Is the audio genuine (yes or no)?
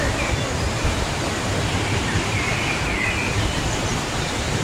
yes